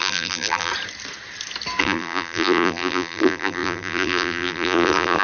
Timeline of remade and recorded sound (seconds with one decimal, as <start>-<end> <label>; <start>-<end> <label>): 0.0-0.7 remade; 0.7-1.8 recorded; 1.8-5.2 remade